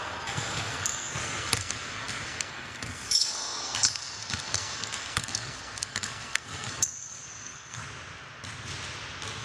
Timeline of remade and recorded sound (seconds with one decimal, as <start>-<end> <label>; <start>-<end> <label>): 0.0-7.8 remade; 7.8-9.4 recorded